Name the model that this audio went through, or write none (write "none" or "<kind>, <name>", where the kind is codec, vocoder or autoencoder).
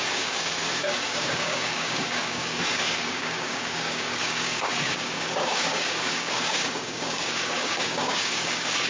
codec, DAC